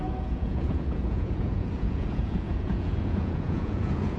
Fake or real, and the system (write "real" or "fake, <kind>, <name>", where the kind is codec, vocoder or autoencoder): fake, vocoder, Vocos